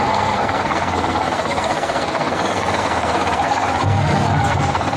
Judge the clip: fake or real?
fake